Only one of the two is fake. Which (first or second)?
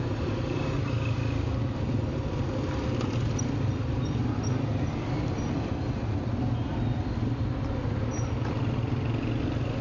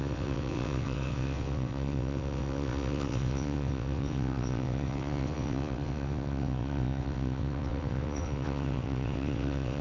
second